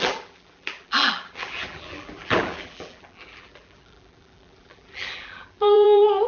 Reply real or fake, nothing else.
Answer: fake